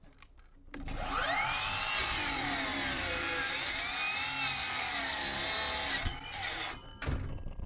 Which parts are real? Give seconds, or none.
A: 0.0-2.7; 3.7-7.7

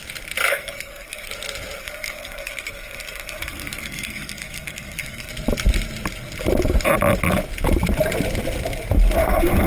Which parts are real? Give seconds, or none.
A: 0.0-0.5; 1.3-1.8; 5.3-9.2

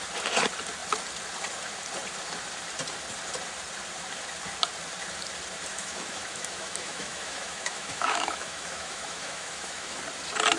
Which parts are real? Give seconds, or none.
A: 0.0-5.7; 10.0-10.6